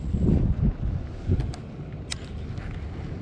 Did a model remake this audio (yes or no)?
no